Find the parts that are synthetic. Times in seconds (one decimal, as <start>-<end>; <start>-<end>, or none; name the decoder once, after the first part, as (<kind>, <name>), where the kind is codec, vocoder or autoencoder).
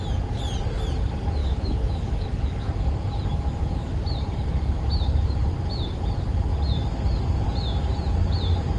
1.4-2.7 (autoencoder, DAC-VAE); 3.3-3.9